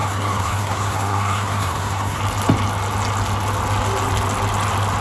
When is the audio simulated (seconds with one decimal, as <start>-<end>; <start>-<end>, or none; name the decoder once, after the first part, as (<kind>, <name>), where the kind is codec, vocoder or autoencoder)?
0.0-2.2 (codec, SNAC)